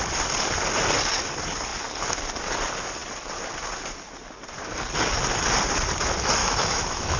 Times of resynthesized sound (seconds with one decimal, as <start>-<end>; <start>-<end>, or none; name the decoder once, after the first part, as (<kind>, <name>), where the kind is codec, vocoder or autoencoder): 6.4-7.2 (autoencoder, DAC-VAE)